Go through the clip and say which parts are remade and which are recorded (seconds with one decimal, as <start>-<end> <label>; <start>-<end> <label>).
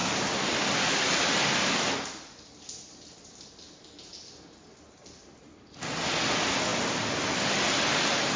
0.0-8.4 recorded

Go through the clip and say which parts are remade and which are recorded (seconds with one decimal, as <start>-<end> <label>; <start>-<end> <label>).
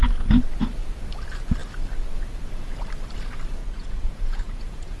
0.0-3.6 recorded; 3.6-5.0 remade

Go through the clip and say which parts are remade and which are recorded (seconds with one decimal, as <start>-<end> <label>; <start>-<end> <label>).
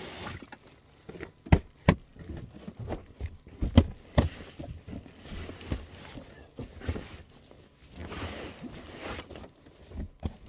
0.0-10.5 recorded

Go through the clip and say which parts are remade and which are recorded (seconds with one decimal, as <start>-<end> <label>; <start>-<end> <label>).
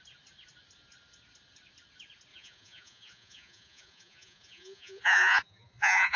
0.0-2.3 recorded; 2.3-6.2 remade